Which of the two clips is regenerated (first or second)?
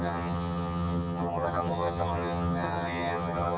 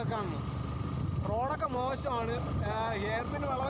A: first